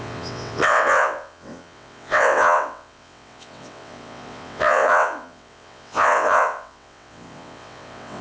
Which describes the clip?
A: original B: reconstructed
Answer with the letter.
B